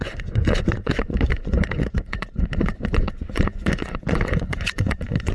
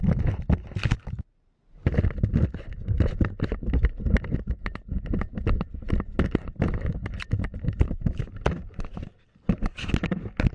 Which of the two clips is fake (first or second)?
first